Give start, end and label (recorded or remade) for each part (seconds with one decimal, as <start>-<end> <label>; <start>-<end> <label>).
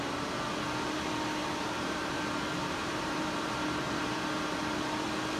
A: 0.0-1.4 recorded; 1.4-4.5 remade; 4.5-5.4 recorded